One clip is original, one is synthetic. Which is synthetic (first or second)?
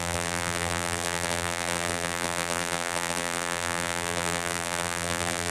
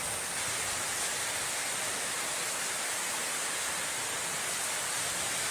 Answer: first